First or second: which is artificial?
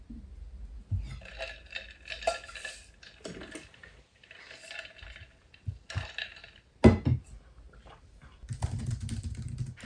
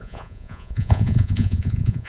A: second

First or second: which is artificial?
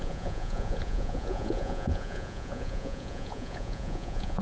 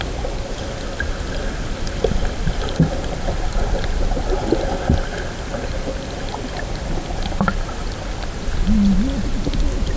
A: first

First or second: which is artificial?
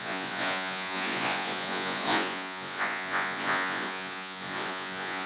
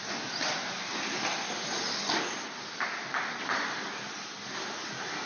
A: first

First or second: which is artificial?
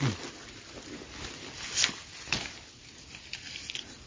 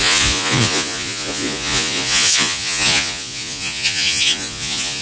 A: second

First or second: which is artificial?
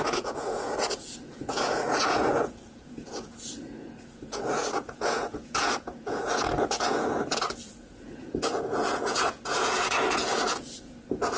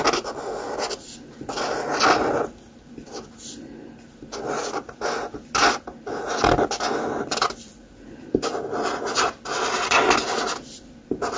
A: first